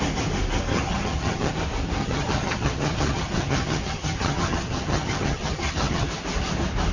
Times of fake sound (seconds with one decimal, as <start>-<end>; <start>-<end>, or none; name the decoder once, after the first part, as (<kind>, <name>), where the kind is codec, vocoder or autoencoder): 0.7-1.5 (vocoder, HiFi-GAN); 2.0-6.1